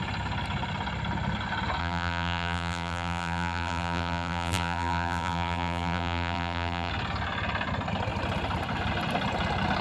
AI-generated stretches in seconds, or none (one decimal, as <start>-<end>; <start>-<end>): 1.8-6.9